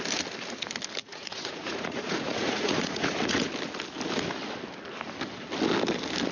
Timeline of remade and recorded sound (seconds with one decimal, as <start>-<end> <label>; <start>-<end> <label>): 0.0-1.0 recorded; 1.0-3.5 remade; 3.5-6.3 recorded